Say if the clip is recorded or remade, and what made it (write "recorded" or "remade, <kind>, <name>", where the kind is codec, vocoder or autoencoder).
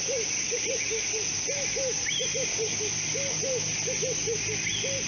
recorded